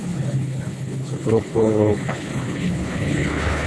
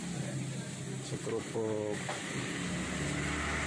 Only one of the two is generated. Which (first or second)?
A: first